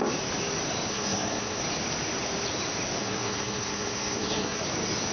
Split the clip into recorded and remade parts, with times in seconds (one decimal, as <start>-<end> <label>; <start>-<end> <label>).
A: 0.0-0.9 recorded; 0.9-1.6 remade; 1.6-3.0 recorded; 3.0-4.6 remade; 4.6-5.1 recorded